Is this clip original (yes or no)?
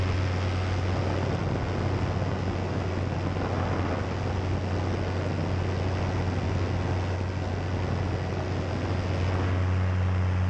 yes